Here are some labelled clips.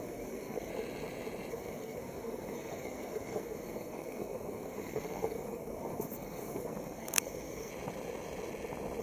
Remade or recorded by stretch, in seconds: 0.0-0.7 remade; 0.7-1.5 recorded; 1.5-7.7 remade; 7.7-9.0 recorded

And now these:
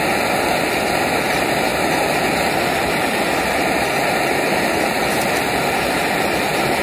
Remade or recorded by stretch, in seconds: 0.0-6.8 recorded

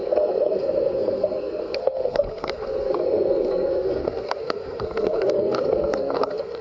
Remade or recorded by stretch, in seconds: 0.0-6.6 remade

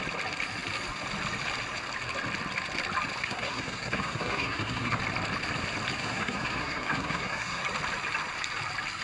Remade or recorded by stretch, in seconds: 0.0-3.2 recorded; 3.2-5.0 remade; 5.0-6.0 recorded; 6.0-7.6 remade; 7.6-9.0 recorded

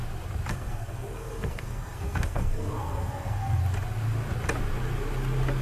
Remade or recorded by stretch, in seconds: 0.0-0.5 recorded; 0.5-3.6 remade; 3.6-5.6 recorded

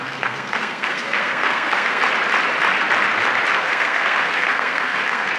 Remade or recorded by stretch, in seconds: 0.0-2.0 remade; 2.0-3.5 recorded; 3.5-5.4 remade

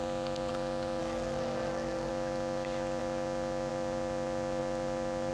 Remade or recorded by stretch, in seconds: 0.0-1.0 recorded; 1.0-2.1 remade; 2.1-5.3 recorded